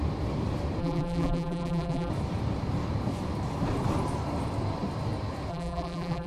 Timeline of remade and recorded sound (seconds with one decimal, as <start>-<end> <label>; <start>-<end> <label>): 0.0-0.8 recorded; 0.8-2.1 remade; 2.1-5.5 recorded; 5.5-6.3 remade